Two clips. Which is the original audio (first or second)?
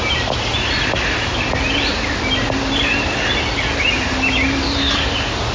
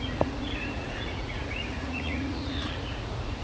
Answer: first